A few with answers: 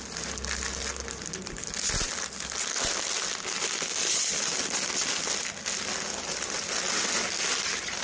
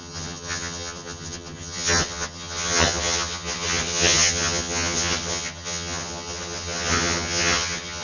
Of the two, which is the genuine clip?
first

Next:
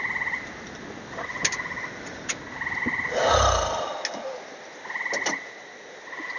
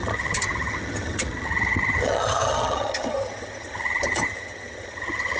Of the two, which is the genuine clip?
first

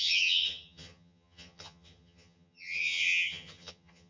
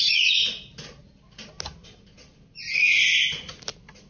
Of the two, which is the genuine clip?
second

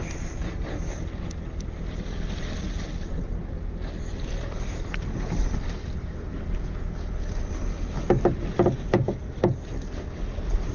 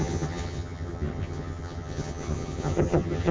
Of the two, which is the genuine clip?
first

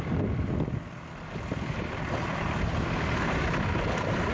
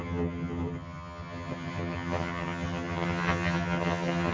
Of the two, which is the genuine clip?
first